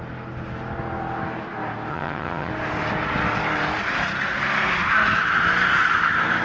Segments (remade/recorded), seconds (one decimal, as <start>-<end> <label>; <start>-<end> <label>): 0.0-1.9 recorded; 1.9-2.5 remade; 2.5-6.4 recorded